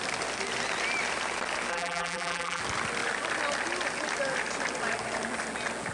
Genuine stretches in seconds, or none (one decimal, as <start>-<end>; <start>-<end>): 0.0-1.7; 2.6-5.9